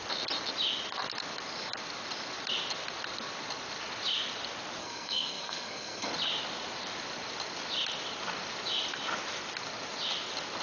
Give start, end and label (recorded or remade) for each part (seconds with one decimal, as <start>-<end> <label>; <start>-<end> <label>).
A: 0.0-4.8 recorded; 4.8-6.1 remade; 6.1-10.6 recorded